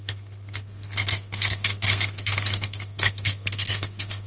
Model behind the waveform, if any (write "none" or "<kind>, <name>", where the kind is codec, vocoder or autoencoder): codec, SNAC